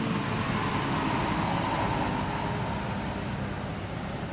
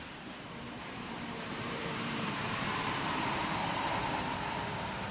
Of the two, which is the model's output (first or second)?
second